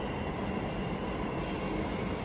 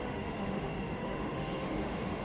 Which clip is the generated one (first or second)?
second